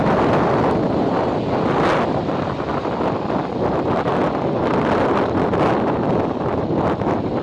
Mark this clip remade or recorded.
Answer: recorded